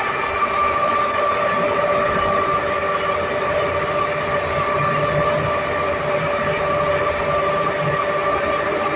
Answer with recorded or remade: remade